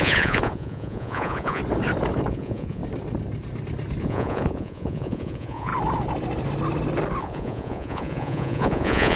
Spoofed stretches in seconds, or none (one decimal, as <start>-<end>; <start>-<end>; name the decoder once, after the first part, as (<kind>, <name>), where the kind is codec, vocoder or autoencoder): 0.0-1.6 (vocoder, Vocos); 2.3-2.8; 4.0-5.7; 7.2-9.2